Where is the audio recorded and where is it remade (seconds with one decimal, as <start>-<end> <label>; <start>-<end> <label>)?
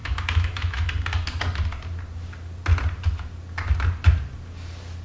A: 0.0-0.9 remade; 0.9-5.0 recorded